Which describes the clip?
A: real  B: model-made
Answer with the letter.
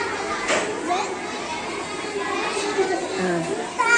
A